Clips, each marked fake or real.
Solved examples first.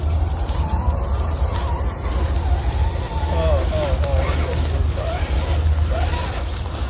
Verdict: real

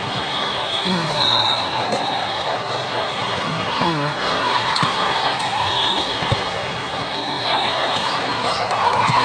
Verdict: fake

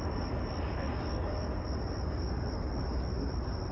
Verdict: real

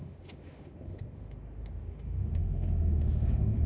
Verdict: fake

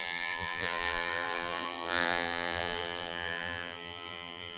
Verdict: fake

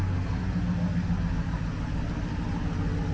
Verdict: real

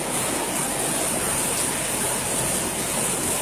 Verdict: real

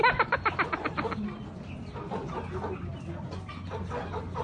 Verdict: real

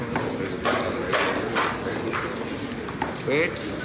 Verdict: real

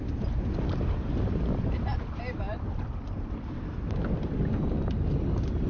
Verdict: real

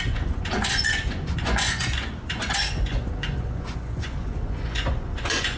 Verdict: fake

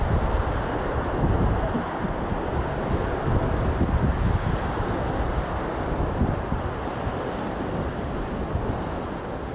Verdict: real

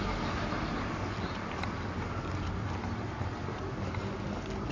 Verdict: real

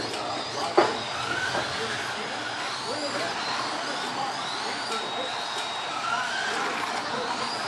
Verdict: real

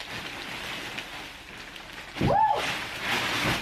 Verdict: real